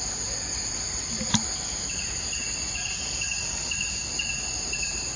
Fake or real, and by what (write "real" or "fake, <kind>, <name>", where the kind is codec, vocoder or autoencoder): real